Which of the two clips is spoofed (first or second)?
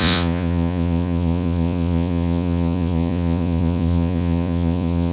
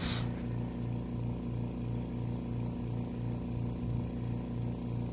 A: first